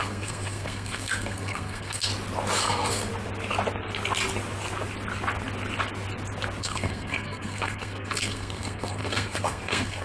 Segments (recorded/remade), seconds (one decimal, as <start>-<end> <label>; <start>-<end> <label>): 0.0-2.1 remade; 2.1-2.6 recorded; 2.6-3.1 remade; 3.1-6.6 recorded; 6.6-10.0 remade